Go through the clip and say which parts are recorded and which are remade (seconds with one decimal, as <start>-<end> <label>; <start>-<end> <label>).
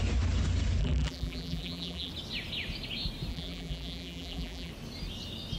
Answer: 0.0-0.8 recorded; 0.8-2.1 remade; 2.1-3.3 recorded; 3.3-4.7 remade; 4.7-5.6 recorded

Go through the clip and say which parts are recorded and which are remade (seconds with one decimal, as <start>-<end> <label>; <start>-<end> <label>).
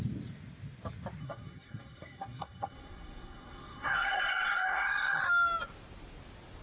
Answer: 0.0-1.2 recorded; 1.2-5.2 remade; 5.2-6.6 recorded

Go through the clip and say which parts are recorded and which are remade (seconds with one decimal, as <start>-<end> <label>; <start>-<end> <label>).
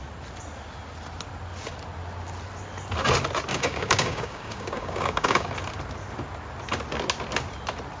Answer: 0.0-3.5 recorded; 3.5-5.5 remade; 5.5-8.0 recorded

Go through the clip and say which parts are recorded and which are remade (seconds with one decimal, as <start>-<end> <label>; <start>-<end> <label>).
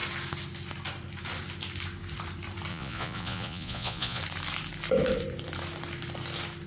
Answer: 0.0-2.7 recorded; 2.7-4.2 remade; 4.2-6.7 recorded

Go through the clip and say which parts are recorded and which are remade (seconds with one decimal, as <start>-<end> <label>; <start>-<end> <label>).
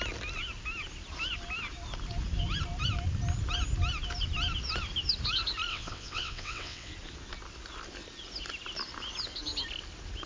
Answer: 0.0-5.7 recorded; 5.7-6.9 remade; 6.9-10.3 recorded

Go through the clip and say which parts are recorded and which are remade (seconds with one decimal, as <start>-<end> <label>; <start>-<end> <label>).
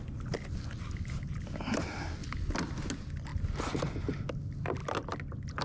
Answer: 0.0-5.6 recorded